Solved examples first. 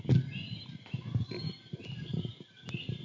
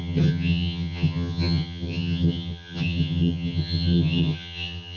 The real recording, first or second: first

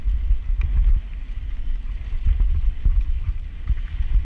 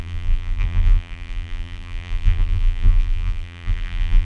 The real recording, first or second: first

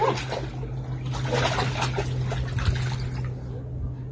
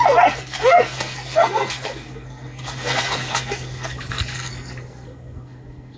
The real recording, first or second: first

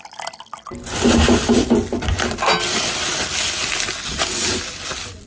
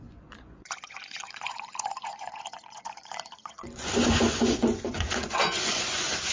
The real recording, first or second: first